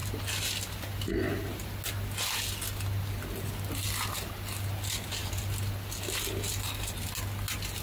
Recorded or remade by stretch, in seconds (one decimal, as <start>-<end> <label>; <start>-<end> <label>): 0.0-7.8 recorded